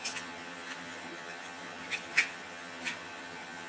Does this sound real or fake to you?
fake